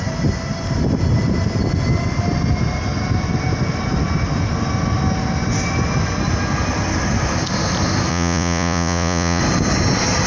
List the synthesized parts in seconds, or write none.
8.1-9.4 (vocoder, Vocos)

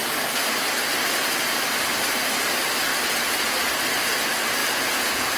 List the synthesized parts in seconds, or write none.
4.6-5.4 (vocoder, Vocos)

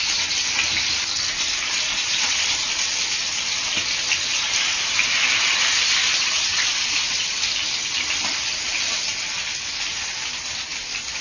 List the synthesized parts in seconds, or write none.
1.9-2.4 (vocoder, Vocos); 6.2-7.4

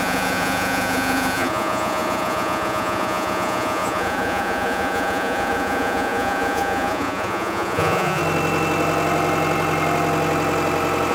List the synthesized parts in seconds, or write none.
0.0-8.2 (vocoder, Vocos)

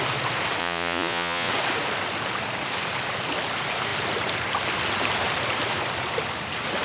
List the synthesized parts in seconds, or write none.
0.6-1.5 (vocoder, Vocos)